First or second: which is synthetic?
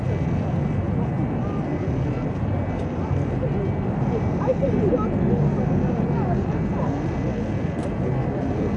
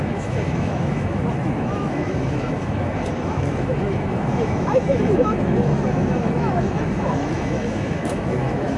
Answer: second